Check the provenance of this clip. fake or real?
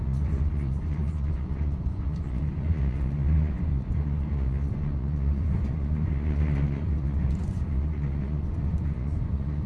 fake